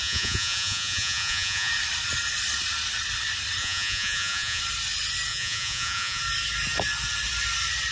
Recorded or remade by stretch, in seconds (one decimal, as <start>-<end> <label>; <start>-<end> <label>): 0.0-1.7 remade; 1.7-3.6 recorded; 3.6-4.6 remade; 4.6-5.3 recorded; 5.3-6.2 remade; 6.2-7.9 recorded